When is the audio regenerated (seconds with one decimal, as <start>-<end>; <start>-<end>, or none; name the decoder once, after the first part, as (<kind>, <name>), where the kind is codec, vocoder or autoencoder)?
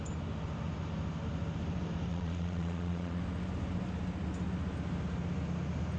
2.1-3.2 (vocoder, Vocos)